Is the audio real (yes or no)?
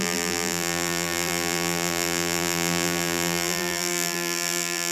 no